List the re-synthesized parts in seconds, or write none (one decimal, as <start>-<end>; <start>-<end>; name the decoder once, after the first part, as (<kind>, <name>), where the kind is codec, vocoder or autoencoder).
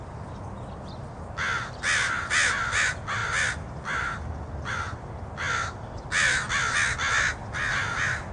none